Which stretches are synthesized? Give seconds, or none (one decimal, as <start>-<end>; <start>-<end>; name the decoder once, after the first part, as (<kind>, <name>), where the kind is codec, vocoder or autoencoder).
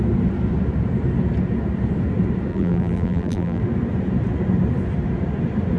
2.5-3.6 (vocoder, BigVGAN v2)